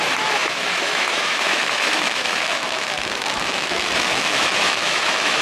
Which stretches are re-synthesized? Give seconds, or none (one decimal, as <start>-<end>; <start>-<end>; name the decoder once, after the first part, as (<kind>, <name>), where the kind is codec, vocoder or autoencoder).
0.0-5.4 (autoencoder, DAC-VAE)